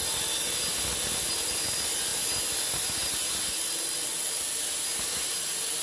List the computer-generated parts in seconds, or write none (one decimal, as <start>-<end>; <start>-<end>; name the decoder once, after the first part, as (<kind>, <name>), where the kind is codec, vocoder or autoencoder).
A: none